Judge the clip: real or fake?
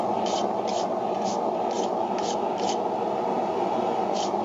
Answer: real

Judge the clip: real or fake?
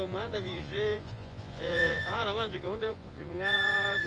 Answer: fake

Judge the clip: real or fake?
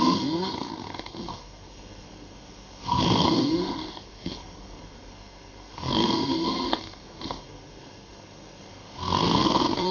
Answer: fake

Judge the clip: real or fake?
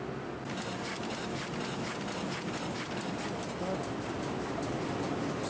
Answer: real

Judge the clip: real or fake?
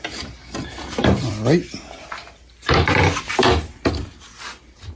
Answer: real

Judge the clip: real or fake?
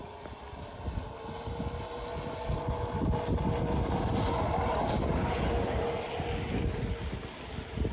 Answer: real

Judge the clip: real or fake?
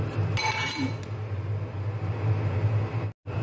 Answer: real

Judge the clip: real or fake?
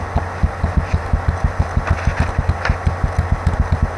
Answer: real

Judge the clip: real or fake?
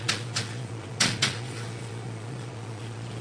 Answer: fake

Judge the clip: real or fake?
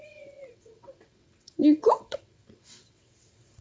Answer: fake